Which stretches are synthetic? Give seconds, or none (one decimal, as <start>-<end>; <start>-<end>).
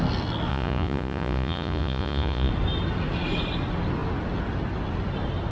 0.5-2.5